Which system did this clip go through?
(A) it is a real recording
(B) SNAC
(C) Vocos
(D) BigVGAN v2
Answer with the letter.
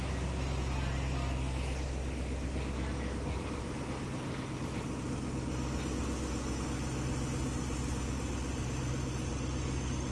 A